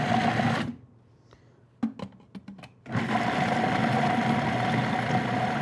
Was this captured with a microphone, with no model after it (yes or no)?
yes